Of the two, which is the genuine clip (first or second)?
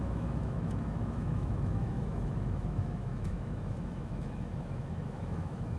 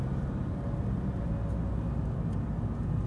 second